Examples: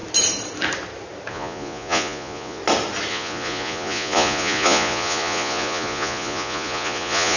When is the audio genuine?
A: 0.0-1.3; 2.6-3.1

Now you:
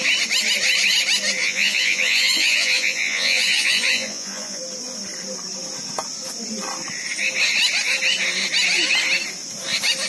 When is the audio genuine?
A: 0.0-1.4; 4.6-10.1